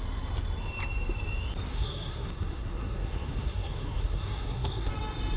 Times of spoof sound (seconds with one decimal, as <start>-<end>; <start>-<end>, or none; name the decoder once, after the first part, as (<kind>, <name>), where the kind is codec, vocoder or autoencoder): 1.7-4.9 (codec, SNAC)